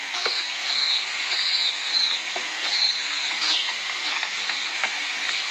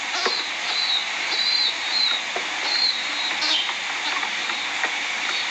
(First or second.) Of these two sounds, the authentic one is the second